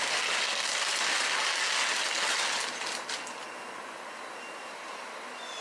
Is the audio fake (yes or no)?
no